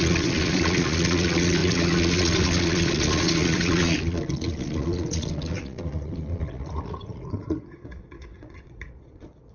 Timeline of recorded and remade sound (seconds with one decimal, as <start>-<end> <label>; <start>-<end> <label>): 0.0-9.5 remade